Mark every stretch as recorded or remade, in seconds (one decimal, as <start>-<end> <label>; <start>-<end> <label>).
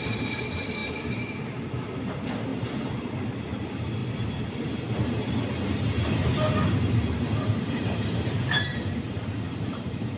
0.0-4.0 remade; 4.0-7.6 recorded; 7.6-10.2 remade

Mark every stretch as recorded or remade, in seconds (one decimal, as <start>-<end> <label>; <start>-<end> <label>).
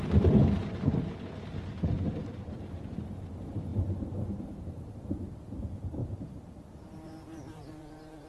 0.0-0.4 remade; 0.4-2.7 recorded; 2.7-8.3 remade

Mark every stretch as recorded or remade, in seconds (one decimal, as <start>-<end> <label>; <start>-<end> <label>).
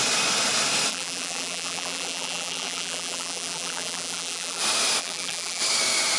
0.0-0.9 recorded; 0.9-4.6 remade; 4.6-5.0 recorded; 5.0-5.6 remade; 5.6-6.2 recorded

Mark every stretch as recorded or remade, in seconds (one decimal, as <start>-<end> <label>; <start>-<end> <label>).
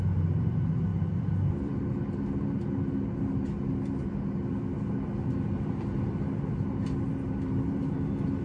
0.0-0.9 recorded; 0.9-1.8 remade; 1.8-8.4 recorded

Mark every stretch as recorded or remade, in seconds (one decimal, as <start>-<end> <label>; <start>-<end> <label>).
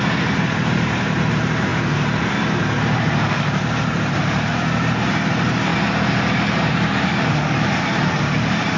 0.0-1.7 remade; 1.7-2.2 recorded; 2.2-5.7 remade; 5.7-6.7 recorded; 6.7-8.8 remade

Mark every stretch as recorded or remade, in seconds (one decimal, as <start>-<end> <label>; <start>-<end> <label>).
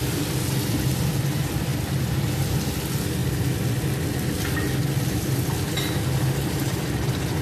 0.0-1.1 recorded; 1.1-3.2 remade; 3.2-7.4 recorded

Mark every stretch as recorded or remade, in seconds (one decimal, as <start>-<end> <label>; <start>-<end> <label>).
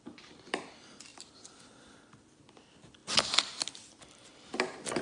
0.0-1.1 remade; 1.1-1.6 recorded; 1.6-3.0 remade; 3.0-3.9 recorded; 3.9-5.0 remade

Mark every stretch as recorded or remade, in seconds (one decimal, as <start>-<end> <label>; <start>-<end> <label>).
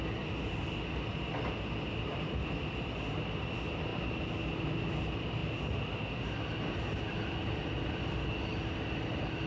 0.0-9.5 recorded